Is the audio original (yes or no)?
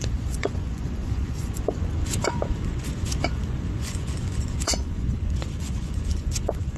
no